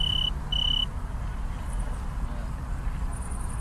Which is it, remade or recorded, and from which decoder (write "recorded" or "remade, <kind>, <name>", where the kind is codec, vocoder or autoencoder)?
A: recorded